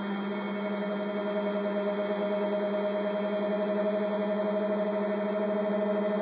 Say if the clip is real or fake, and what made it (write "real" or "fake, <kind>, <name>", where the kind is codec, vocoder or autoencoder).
real